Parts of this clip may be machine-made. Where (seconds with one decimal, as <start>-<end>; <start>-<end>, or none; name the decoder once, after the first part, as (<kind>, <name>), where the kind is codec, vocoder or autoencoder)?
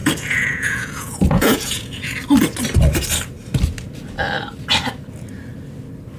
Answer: 0.0-2.1 (vocoder, Vocos)